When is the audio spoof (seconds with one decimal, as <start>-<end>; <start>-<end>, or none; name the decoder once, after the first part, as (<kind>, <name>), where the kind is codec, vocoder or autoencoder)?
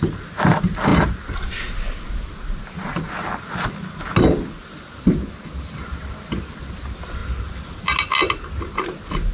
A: none